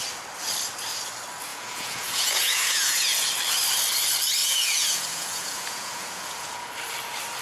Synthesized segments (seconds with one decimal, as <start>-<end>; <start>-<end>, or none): 1.5-3.3; 4.4-6.7